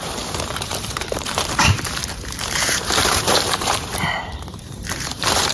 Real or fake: fake